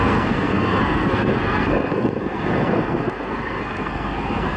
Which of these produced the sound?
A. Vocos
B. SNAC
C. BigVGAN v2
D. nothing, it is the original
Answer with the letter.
B